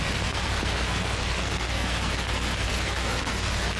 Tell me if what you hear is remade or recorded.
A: remade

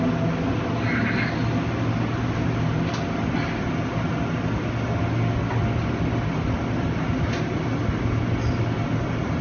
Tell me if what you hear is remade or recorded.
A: recorded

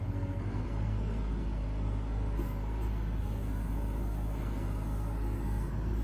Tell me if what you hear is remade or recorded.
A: remade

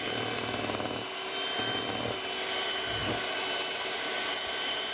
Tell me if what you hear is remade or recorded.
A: recorded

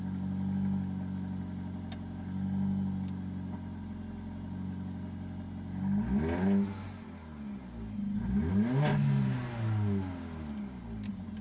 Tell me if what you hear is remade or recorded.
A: recorded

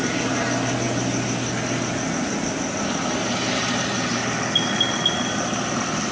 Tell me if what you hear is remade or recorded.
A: recorded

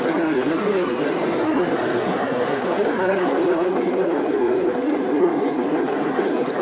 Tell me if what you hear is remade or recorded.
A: remade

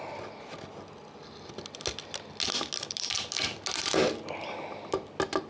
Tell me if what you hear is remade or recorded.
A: recorded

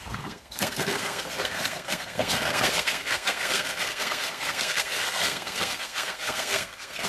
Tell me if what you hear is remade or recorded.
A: remade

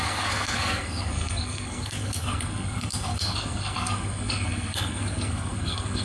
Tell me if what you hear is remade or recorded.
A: remade